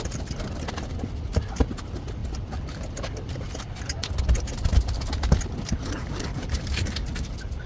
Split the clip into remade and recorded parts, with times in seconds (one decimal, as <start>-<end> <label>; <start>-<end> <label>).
0.0-7.7 recorded